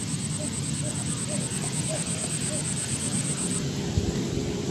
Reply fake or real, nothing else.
fake